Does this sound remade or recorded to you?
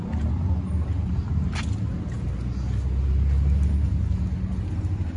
recorded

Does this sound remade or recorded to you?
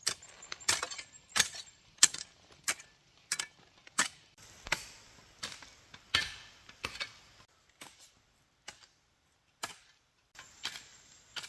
recorded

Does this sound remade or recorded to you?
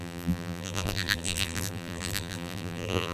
remade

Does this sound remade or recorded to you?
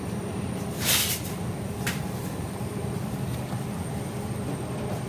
remade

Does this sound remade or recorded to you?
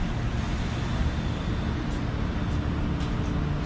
recorded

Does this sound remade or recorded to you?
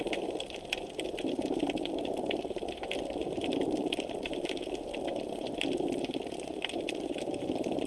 remade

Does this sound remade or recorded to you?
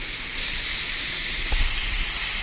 recorded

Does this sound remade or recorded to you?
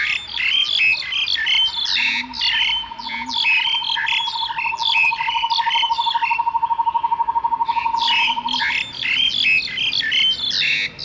recorded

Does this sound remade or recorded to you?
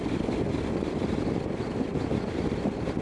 recorded